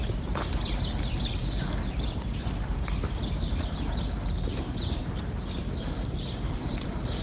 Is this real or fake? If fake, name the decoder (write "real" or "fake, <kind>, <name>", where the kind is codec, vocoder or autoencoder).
fake, vocoder, BigVGAN v2